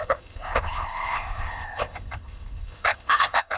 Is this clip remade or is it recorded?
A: remade